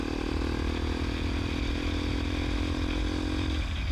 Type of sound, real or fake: real